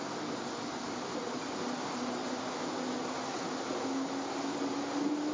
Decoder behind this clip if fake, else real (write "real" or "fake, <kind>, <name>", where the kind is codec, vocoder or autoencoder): real